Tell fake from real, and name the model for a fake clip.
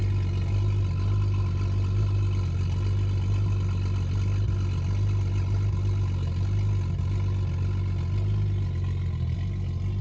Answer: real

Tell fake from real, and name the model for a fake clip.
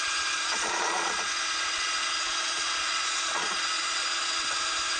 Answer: fake, vocoder, Vocos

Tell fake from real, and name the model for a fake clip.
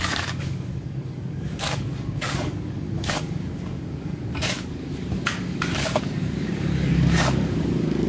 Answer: fake, codec, DAC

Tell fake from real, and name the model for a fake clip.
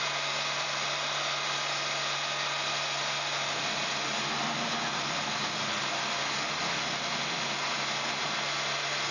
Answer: real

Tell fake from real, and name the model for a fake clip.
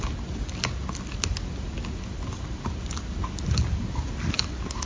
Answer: real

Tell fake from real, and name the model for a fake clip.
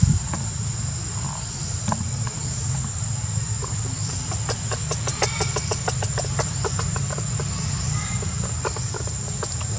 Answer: real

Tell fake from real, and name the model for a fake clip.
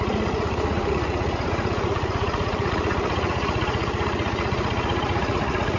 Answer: fake, vocoder, Vocos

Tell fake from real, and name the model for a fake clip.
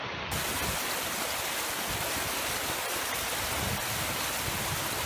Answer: real